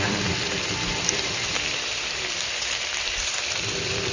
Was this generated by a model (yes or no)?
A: yes